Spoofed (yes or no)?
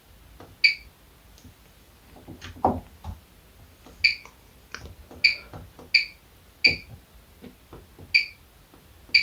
no